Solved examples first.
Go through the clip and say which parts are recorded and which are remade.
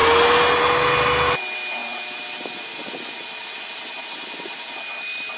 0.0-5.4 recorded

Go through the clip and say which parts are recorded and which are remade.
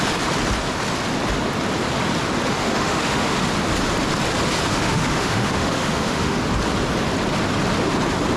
0.0-2.6 recorded; 2.6-3.5 remade; 3.5-4.7 recorded; 4.7-6.4 remade; 6.4-8.4 recorded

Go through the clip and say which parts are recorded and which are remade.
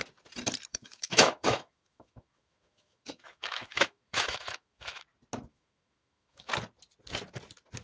0.0-0.7 recorded; 0.7-5.0 remade; 5.0-5.5 recorded; 5.5-6.5 remade; 6.5-7.8 recorded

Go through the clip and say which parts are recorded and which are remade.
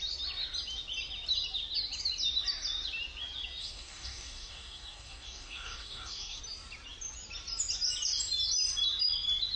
0.0-3.6 recorded; 3.6-6.4 remade; 6.4-9.6 recorded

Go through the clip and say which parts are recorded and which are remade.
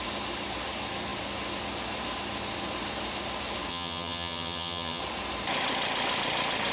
0.0-3.7 recorded; 3.7-5.0 remade; 5.0-6.7 recorded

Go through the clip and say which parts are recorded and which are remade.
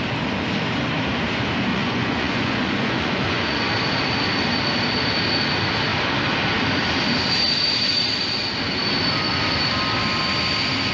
0.0-1.7 recorded; 1.7-3.7 remade; 3.7-10.9 recorded